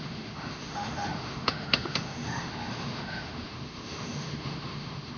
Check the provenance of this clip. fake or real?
fake